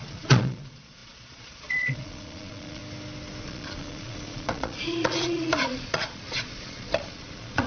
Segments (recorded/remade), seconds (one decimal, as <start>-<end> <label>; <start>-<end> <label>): 0.0-2.8 remade; 2.8-3.4 recorded; 3.4-7.7 remade